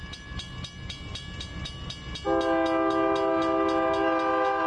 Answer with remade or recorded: recorded